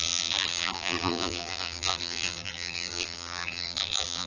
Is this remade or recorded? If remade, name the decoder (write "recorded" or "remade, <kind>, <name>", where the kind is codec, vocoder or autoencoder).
remade, vocoder, BigVGAN v2